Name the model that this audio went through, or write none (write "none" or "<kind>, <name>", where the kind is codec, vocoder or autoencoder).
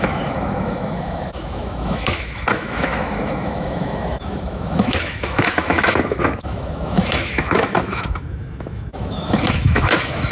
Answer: autoencoder, DAC-VAE